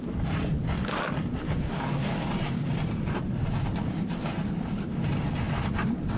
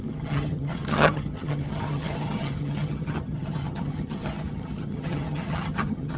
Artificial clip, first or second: second